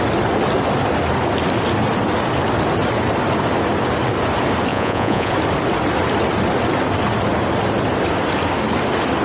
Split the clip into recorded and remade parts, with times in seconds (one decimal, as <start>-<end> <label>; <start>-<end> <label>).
0.0-4.7 recorded; 4.7-5.3 remade; 5.3-9.2 recorded